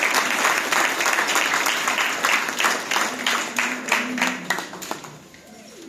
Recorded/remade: recorded